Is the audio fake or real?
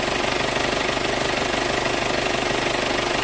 real